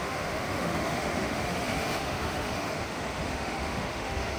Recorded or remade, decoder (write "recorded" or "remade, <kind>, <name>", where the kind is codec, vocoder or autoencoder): remade, autoencoder, DAC-VAE